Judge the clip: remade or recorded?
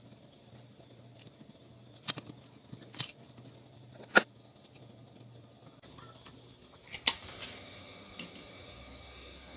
recorded